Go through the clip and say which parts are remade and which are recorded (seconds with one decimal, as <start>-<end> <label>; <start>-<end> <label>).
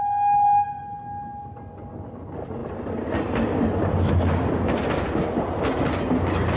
0.0-6.6 recorded